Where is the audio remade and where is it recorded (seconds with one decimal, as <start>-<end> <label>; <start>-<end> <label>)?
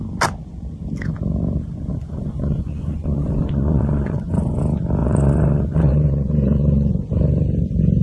0.0-1.9 recorded; 1.9-4.6 remade; 4.6-5.0 recorded; 5.0-6.9 remade; 6.9-8.0 recorded